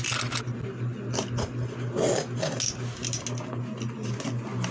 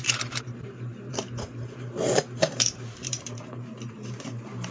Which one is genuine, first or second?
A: first